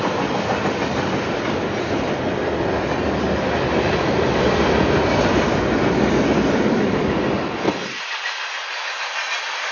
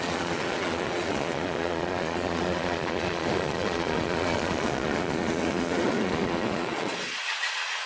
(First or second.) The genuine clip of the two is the first